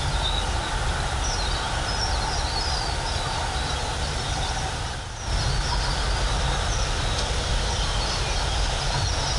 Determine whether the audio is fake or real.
real